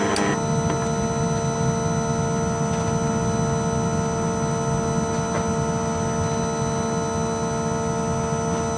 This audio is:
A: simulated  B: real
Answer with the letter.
B